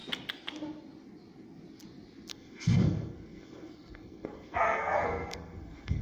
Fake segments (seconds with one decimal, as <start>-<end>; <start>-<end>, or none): 2.3-6.0